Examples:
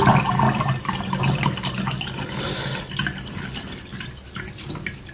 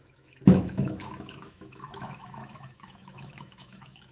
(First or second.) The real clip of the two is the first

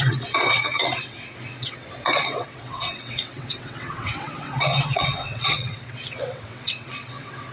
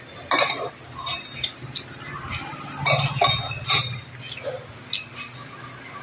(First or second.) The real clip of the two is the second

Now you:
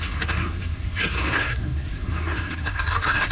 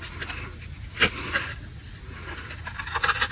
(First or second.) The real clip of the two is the second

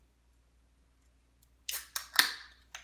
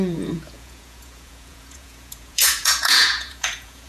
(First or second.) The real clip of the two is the first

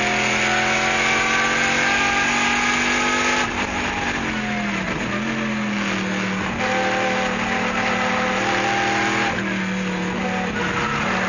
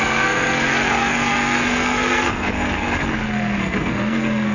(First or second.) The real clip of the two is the first